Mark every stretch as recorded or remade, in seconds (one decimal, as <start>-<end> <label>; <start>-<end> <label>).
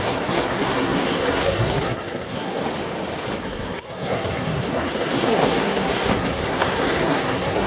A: 0.0-2.6 remade; 2.6-3.4 recorded; 3.4-7.7 remade